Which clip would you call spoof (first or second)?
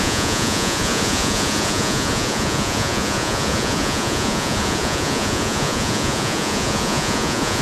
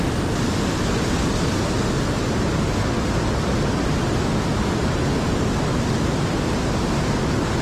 first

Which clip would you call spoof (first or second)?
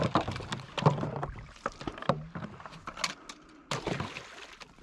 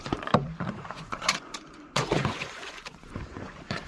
second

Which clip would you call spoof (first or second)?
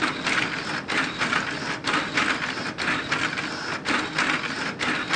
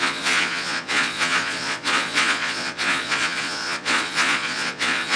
second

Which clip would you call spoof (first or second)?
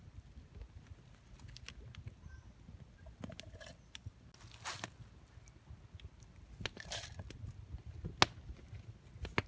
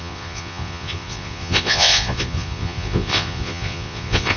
second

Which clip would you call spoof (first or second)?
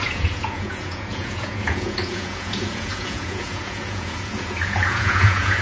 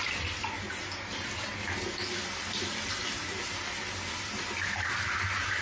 first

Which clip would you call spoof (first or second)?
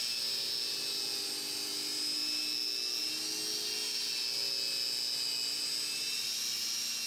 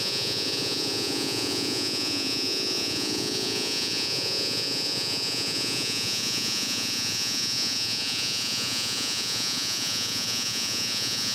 second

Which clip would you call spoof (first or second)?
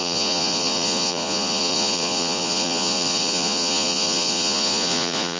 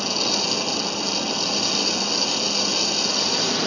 first